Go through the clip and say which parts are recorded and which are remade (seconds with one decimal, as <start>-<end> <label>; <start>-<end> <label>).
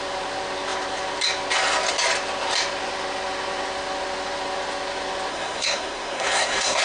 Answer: 0.0-5.3 recorded; 5.3-6.8 remade